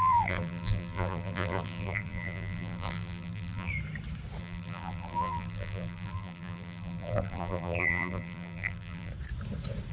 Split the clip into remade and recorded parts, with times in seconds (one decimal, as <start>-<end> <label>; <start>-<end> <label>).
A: 0.0-3.7 remade; 3.7-4.4 recorded; 4.4-9.1 remade; 9.1-9.9 recorded